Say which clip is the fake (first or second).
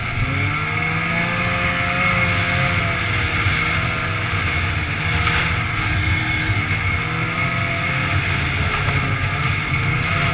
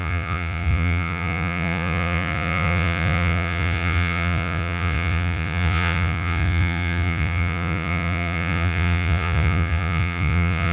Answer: second